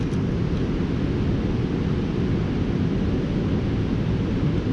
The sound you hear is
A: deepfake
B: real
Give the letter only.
B